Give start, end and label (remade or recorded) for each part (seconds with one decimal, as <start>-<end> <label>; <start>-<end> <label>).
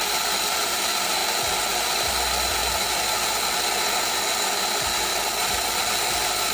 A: 0.0-5.1 recorded; 5.1-5.9 remade; 5.9-6.5 recorded